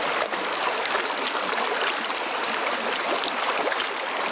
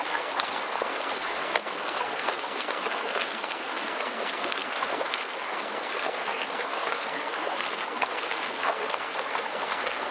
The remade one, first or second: second